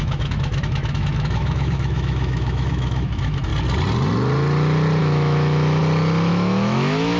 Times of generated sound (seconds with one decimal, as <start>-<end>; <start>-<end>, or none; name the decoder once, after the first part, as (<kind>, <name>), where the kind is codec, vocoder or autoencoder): 0.0-3.5 (autoencoder, DAC-VAE); 5.0-5.8; 6.3-7.2